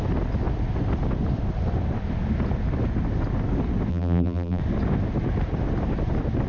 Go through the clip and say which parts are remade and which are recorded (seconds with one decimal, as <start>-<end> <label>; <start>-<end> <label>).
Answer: 0.0-3.9 recorded; 3.9-4.6 remade; 4.6-6.5 recorded